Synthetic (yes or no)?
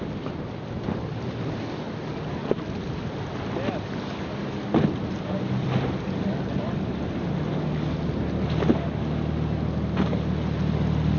no